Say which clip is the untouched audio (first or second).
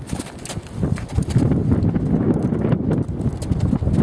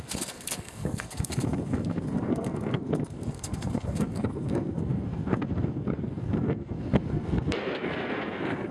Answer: first